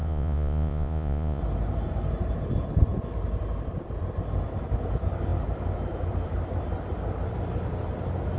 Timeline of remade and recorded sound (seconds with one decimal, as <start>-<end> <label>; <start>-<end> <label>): 0.0-1.4 remade; 1.4-8.4 recorded